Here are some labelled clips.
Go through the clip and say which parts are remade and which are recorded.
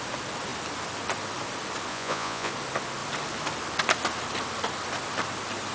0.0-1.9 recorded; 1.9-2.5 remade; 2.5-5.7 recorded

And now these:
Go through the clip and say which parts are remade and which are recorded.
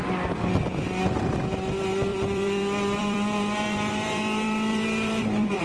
0.0-2.1 recorded; 2.1-5.6 remade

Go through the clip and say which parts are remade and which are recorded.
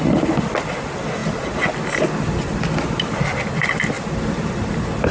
0.0-5.1 recorded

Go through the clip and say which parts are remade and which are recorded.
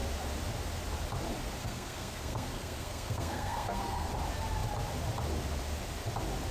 0.0-1.6 recorded; 1.6-4.1 remade; 4.1-6.5 recorded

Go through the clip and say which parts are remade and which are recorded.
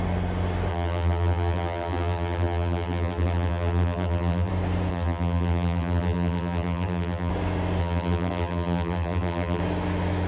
0.0-0.7 recorded; 0.7-4.5 remade; 4.5-4.9 recorded; 4.9-7.3 remade; 7.3-7.8 recorded; 7.8-9.6 remade; 9.6-10.3 recorded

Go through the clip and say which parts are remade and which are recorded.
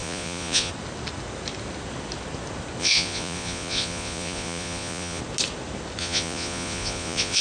0.0-0.7 remade; 0.7-2.8 recorded; 2.8-5.2 remade; 5.2-6.0 recorded; 6.0-7.4 remade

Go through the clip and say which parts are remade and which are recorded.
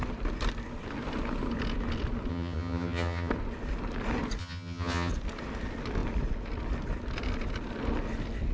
0.0-2.3 recorded; 2.3-3.3 remade; 3.3-4.4 recorded; 4.4-5.1 remade; 5.1-8.5 recorded